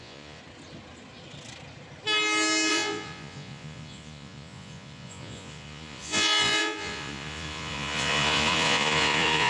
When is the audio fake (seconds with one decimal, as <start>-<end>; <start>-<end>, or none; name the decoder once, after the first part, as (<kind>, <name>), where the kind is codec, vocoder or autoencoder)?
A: 0.0-0.4 (vocoder, Vocos); 2.7-9.5